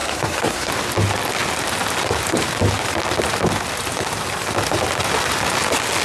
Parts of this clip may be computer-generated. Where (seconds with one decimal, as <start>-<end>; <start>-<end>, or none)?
0.0-0.7